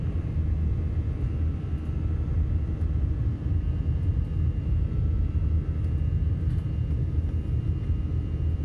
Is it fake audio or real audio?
real